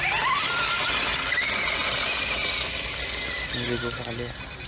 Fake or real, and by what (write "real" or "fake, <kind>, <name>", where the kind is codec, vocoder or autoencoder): real